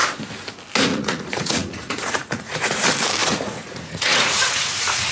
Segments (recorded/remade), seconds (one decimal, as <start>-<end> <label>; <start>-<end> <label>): 0.0-0.9 recorded; 0.9-2.8 remade; 2.8-3.2 recorded; 3.2-5.1 remade